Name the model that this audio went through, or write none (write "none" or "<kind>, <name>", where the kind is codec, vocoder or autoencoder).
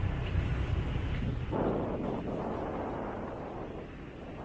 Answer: none